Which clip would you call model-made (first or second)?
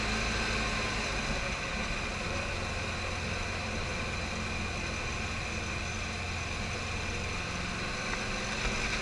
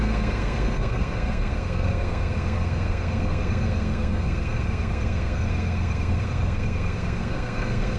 second